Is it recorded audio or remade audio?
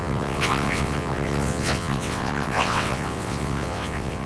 remade